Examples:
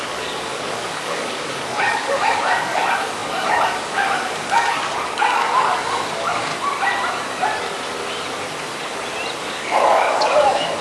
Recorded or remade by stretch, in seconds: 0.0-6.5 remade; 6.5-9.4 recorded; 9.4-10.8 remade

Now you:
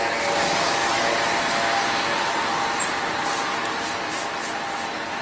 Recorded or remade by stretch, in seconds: 0.0-5.2 recorded

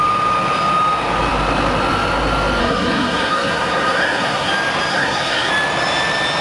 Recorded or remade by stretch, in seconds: 0.0-2.6 recorded; 2.6-4.5 remade; 4.5-4.9 recorded; 4.9-5.5 remade; 5.5-6.4 recorded

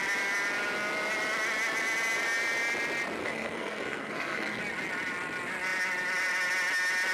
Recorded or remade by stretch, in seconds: 0.0-3.2 recorded; 3.2-4.6 remade; 4.6-7.1 recorded

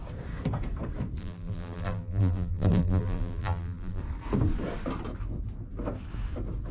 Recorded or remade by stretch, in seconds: 0.0-1.2 recorded; 1.2-4.0 remade; 4.0-6.7 recorded

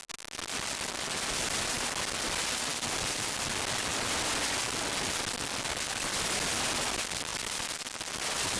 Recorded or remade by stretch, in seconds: 0.0-7.3 recorded; 7.3-8.6 remade